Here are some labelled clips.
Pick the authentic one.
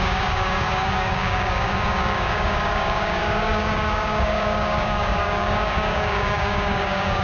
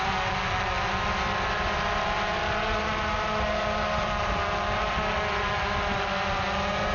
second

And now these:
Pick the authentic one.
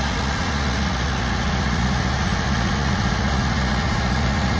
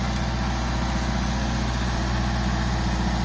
second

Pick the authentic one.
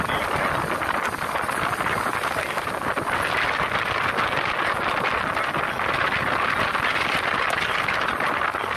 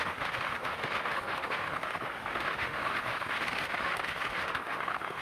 first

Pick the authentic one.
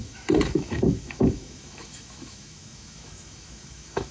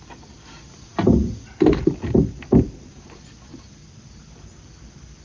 second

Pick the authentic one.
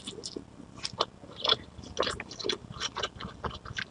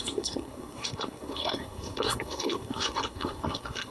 first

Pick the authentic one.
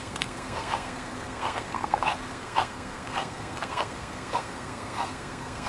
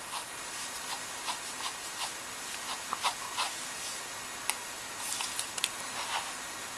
second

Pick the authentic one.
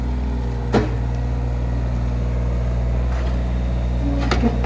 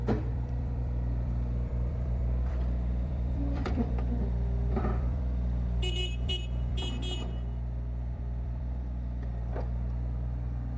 first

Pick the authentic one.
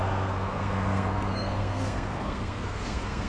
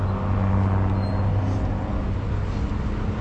second